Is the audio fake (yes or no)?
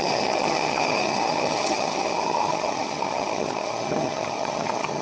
yes